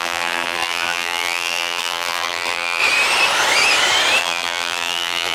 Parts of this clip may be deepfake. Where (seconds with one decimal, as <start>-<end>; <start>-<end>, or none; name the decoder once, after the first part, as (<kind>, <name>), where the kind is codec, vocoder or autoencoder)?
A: 0.0-2.8 (vocoder, BigVGAN v2); 4.2-5.3